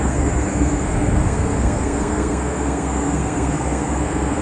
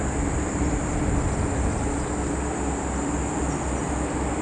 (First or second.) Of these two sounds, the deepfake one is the first